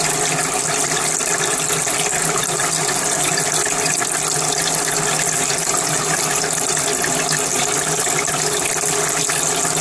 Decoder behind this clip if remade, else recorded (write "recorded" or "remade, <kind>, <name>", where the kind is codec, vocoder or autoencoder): recorded